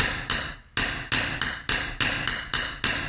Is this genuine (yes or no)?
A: yes